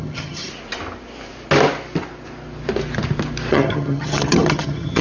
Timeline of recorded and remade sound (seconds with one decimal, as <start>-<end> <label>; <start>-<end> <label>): 0.0-0.5 remade; 0.5-3.5 recorded; 3.5-5.0 remade